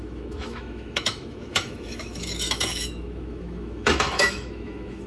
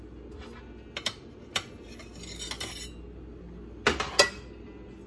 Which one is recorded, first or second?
second